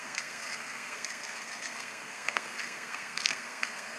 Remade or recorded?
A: remade